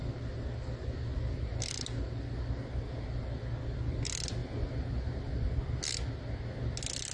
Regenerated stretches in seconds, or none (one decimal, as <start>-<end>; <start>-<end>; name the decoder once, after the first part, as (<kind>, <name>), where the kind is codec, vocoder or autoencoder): none